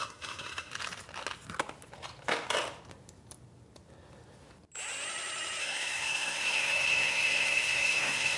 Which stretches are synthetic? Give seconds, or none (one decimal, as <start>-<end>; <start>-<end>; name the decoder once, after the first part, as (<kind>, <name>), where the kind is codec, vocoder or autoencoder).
0.0-0.7 (codec, SNAC); 5.6-8.4